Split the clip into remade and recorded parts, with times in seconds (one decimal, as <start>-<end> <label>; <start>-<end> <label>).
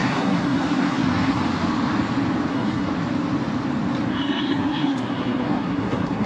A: 0.0-1.4 remade; 1.4-2.5 recorded; 2.5-2.9 remade; 2.9-4.1 recorded; 4.1-6.3 remade